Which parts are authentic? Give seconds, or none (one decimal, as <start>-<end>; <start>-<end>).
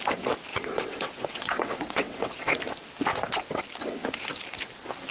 0.0-0.5; 2.6-3.1; 3.6-5.1